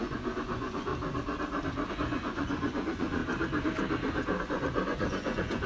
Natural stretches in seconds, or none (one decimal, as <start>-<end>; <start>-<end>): 0.9-1.9; 3.2-4.4